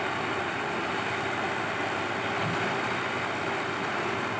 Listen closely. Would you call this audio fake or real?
real